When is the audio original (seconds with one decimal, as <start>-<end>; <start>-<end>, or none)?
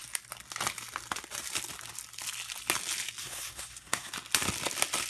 0.0-3.2; 4.1-5.1